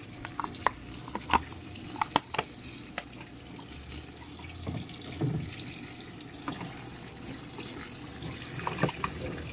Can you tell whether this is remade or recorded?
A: recorded